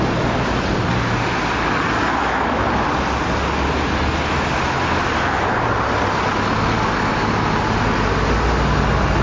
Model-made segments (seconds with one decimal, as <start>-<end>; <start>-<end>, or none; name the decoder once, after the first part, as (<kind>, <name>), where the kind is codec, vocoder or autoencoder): none